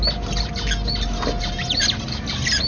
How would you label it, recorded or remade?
recorded